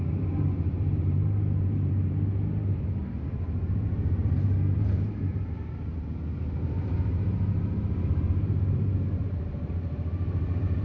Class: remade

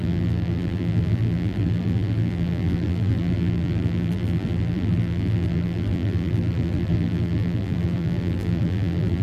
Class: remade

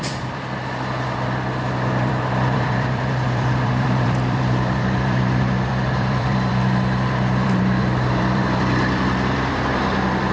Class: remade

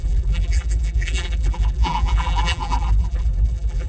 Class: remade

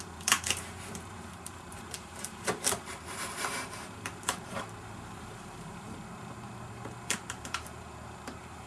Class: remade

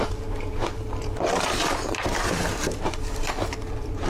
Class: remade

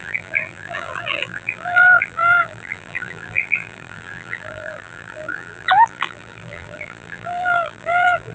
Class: remade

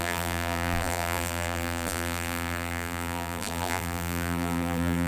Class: remade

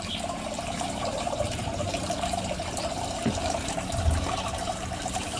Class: remade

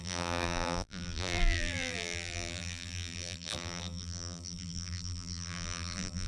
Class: remade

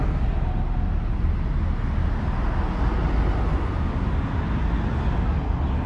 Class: recorded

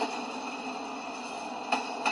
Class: recorded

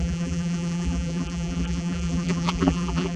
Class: remade